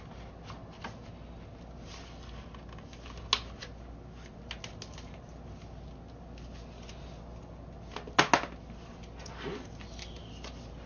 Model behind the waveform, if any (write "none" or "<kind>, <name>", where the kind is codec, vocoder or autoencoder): none